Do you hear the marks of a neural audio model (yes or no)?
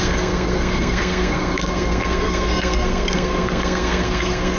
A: yes